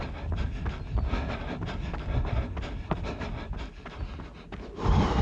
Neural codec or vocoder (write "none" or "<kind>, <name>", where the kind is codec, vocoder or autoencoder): none